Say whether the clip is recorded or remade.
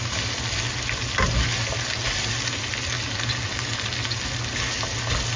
recorded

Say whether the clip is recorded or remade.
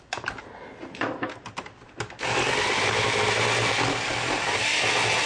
recorded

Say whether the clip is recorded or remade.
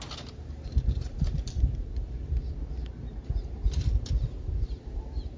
remade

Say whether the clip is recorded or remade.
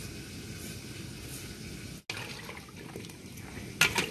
recorded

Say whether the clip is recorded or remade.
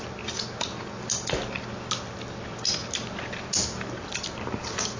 recorded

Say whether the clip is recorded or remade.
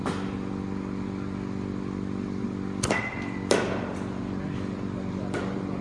recorded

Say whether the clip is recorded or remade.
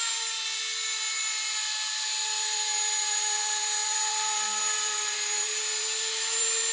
remade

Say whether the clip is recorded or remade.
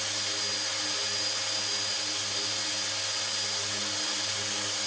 recorded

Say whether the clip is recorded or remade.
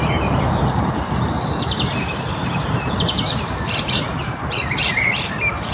remade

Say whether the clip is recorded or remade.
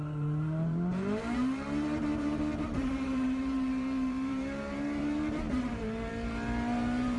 remade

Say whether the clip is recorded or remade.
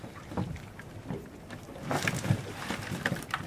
remade